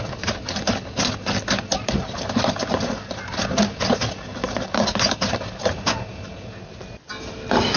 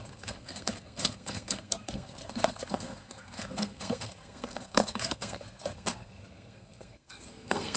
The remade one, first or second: second